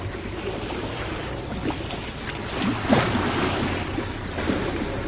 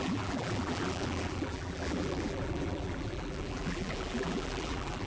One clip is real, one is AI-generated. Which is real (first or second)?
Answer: first